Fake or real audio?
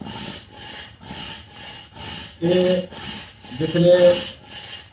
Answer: real